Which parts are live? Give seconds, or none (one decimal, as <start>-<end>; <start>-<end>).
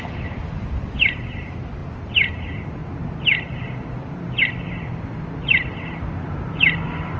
0.0-7.2